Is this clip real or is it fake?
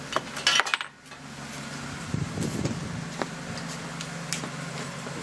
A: real